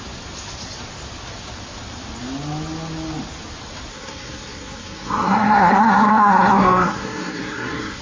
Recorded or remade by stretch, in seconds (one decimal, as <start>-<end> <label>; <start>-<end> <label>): 0.0-3.9 recorded; 3.9-8.0 remade